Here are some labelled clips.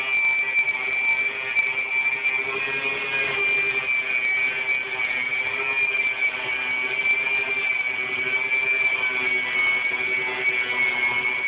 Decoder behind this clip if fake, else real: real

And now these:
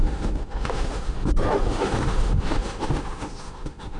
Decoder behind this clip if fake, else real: fake, autoencoder, DAC-VAE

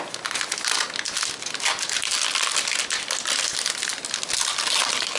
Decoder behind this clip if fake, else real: real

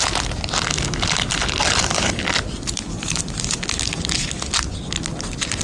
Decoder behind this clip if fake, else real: real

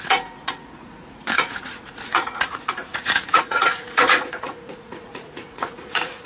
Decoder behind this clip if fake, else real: fake, vocoder, Vocos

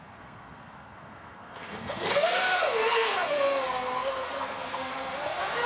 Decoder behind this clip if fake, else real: fake, codec, SNAC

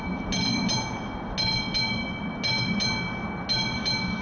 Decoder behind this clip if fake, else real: real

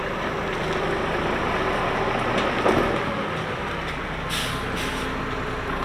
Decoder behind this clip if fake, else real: real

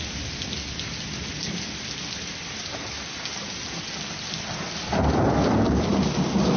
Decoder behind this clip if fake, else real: real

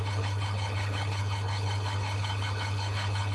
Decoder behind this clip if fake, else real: fake, codec, HILCodec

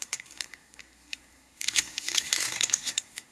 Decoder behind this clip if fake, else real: fake, codec, SNAC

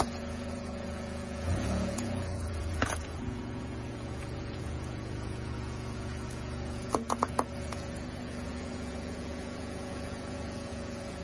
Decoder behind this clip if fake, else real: fake, vocoder, Vocos